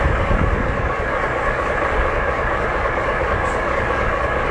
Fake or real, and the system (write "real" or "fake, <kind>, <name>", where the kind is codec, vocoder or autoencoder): fake, codec, DAC